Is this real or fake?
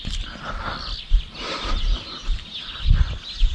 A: real